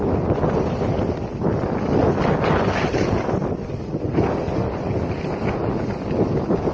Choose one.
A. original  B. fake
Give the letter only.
A